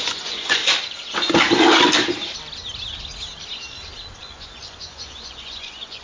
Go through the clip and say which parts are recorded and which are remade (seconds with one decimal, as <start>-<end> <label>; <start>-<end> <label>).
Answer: 0.0-0.6 remade; 0.6-4.2 recorded; 4.2-6.0 remade